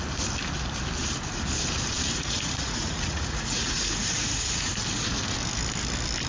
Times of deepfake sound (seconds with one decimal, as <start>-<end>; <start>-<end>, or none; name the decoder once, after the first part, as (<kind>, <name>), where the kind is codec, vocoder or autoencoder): 2.0-4.7 (vocoder, Vocos)